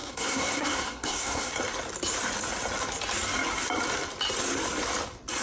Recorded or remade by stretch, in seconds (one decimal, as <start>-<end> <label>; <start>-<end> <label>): 0.0-1.5 remade; 1.5-5.4 recorded